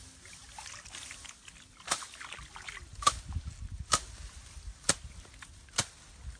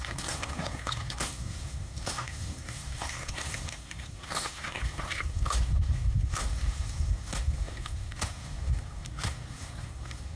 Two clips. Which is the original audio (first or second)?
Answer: first